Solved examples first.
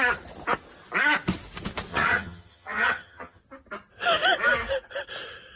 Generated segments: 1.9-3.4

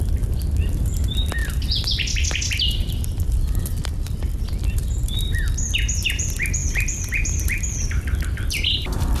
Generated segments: 1.4-4.8; 6.6-8.5

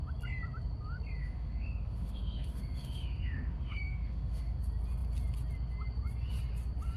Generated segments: 1.2-4.6

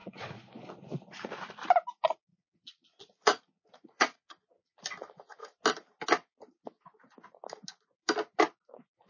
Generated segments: 0.0-0.8; 2.3-4.8

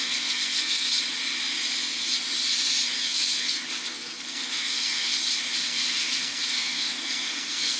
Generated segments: 0.0-0.9; 3.0-5.1; 5.6-7.8